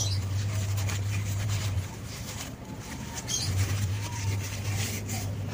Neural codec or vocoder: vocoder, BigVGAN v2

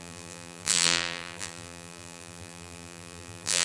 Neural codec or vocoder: vocoder, BigVGAN v2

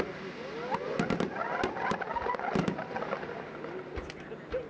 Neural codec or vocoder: none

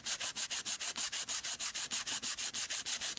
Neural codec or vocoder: vocoder, BigVGAN v2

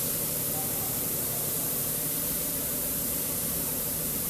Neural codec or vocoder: vocoder, BigVGAN v2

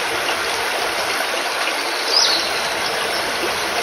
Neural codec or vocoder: none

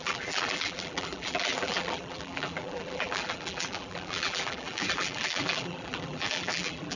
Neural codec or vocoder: vocoder, BigVGAN v2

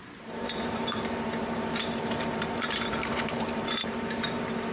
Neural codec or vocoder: vocoder, BigVGAN v2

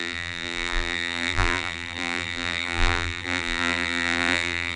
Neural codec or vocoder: vocoder, BigVGAN v2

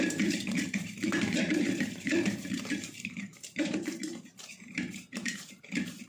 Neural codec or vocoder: vocoder, BigVGAN v2